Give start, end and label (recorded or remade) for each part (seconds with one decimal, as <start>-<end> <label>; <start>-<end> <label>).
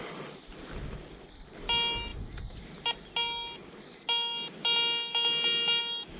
0.0-6.2 recorded